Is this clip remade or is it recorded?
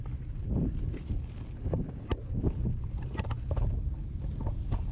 recorded